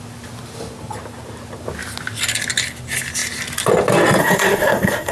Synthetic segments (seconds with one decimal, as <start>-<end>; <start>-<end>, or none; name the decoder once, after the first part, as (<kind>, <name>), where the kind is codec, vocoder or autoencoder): 4.2-5.1 (codec, SNAC)